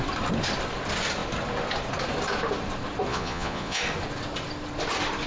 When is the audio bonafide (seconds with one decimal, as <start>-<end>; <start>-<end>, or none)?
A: 0.0-3.1; 3.8-5.3